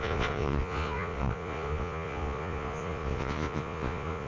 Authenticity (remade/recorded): remade